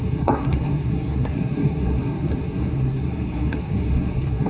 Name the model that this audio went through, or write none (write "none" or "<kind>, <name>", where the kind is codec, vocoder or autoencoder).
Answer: codec, SNAC